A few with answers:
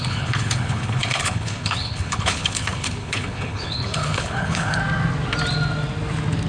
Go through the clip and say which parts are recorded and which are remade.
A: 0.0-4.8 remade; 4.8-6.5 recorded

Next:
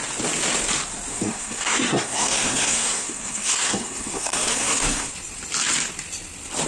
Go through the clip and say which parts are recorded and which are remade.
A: 0.0-1.1 recorded; 1.1-5.1 remade; 5.1-6.7 recorded

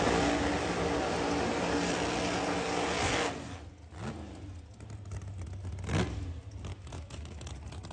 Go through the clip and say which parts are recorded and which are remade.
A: 0.0-6.7 recorded; 6.7-7.5 remade; 7.5-7.9 recorded

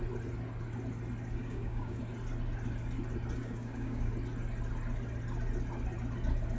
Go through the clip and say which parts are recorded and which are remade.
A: 0.0-1.4 recorded; 1.4-2.0 remade; 2.0-3.4 recorded; 3.4-4.1 remade; 4.1-6.6 recorded

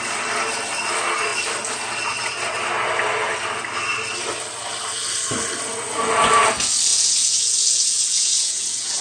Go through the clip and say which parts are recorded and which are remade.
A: 0.0-6.9 recorded; 6.9-9.0 remade